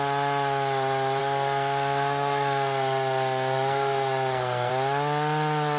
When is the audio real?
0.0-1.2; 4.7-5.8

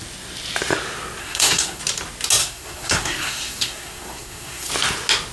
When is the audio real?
0.0-1.2; 1.8-2.4; 4.7-5.3

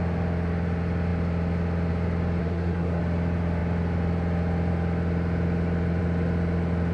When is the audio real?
0.0-2.4; 3.0-6.9